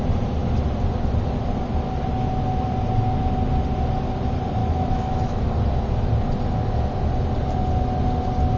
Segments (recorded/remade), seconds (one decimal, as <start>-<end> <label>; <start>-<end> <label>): 0.0-4.6 recorded; 4.6-5.4 remade; 5.4-8.6 recorded

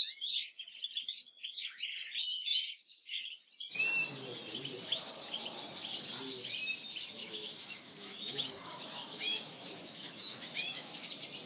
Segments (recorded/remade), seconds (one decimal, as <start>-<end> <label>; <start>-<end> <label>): 0.0-2.4 recorded; 2.4-3.2 remade; 3.2-7.2 recorded; 7.2-11.1 remade; 11.1-11.5 recorded

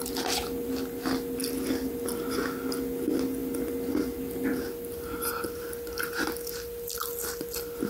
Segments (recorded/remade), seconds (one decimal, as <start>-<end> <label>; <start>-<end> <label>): 0.0-7.9 recorded

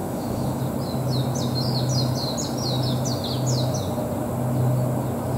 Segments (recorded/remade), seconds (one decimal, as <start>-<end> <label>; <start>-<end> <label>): 0.0-0.6 remade; 0.6-5.4 recorded